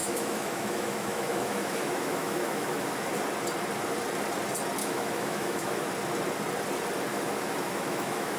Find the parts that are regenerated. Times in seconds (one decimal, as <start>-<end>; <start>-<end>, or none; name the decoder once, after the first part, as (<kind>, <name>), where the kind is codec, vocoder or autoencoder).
0.0-2.9 (autoencoder, DAC-VAE); 4.8-5.9; 7.1-8.4